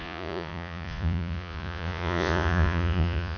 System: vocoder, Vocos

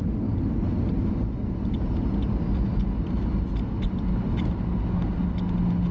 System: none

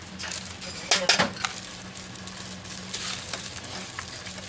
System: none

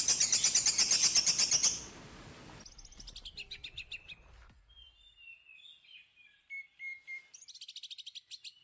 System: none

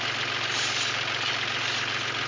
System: none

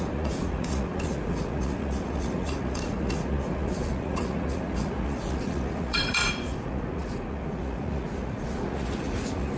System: vocoder, Vocos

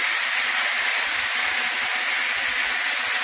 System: none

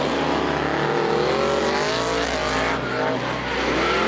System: none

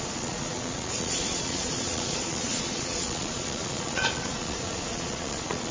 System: vocoder, Vocos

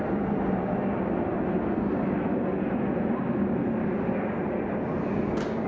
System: none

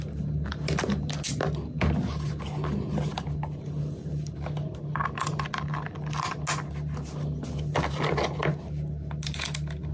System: none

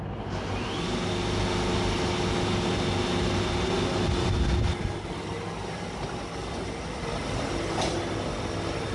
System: none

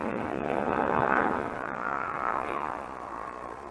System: vocoder, Vocos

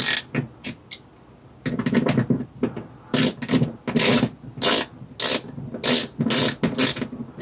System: none